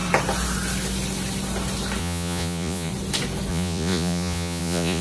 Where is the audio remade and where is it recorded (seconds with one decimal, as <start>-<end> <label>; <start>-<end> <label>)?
0.0-2.0 recorded; 2.0-2.9 remade; 2.9-3.5 recorded; 3.5-5.0 remade